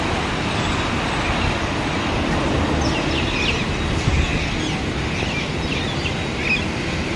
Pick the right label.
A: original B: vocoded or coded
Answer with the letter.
A